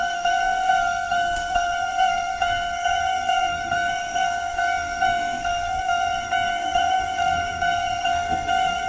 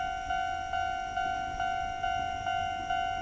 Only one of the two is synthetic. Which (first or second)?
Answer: first